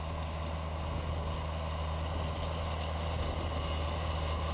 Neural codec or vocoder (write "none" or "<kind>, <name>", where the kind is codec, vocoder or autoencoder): none